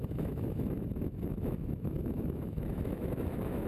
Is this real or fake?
fake